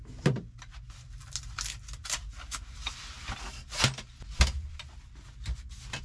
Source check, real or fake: real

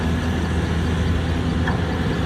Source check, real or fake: real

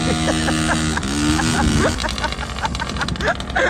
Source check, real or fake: real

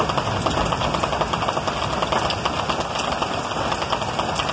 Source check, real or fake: real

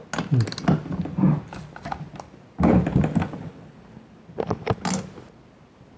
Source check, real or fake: real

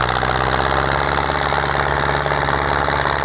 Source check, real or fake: real